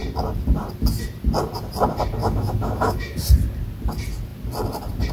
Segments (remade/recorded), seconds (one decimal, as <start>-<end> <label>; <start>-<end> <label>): 0.0-2.2 recorded; 2.2-3.2 remade; 3.2-5.1 recorded